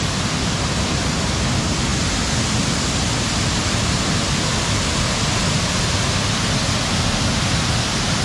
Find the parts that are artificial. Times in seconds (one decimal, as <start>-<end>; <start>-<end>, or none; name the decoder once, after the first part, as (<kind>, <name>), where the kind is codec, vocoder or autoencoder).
none